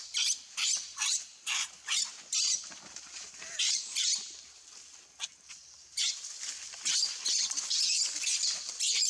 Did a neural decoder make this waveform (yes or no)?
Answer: no